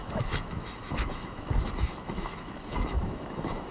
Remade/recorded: remade